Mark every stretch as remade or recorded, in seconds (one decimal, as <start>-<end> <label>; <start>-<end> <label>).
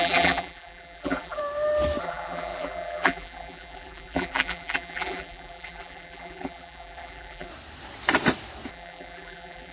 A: 0.0-1.4 remade; 1.4-2.0 recorded; 2.0-7.5 remade; 7.5-8.7 recorded; 8.7-9.7 remade